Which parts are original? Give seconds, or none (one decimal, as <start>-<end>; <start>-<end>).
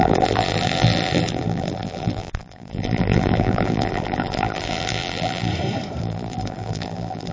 5.5-6.0